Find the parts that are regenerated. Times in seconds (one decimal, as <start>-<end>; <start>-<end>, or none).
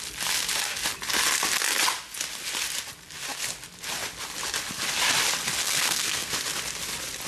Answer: 5.6-6.3